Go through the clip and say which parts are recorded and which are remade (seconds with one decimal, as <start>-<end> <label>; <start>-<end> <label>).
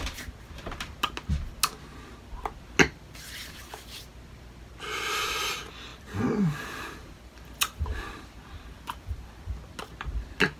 0.0-5.9 recorded; 5.9-9.3 remade; 9.3-10.6 recorded